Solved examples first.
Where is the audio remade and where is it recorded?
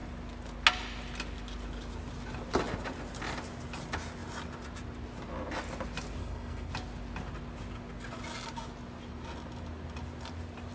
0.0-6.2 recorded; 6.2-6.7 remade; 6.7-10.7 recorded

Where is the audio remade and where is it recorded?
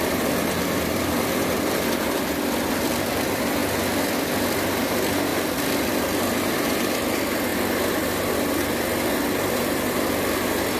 0.0-3.6 remade; 3.6-4.2 recorded; 4.2-7.5 remade; 7.5-8.3 recorded; 8.3-10.8 remade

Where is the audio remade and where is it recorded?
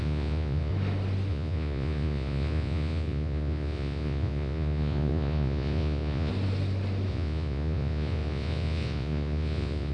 0.0-0.7 remade; 0.7-1.3 recorded; 1.3-6.3 remade; 6.3-7.1 recorded; 7.1-9.9 remade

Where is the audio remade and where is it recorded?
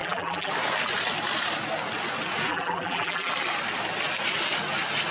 0.0-0.5 remade; 0.5-2.5 recorded; 2.5-3.3 remade; 3.3-5.1 recorded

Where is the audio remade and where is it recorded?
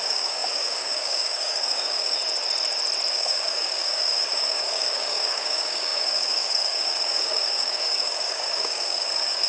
0.0-2.2 remade; 2.2-3.1 recorded; 3.1-9.5 remade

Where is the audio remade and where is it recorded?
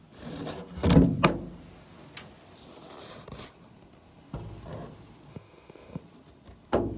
0.0-5.3 recorded; 5.3-6.0 remade; 6.0-7.0 recorded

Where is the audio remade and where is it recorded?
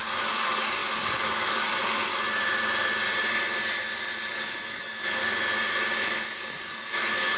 0.0-2.1 remade; 2.1-4.3 recorded; 4.3-5.2 remade; 5.2-6.1 recorded; 6.1-7.4 remade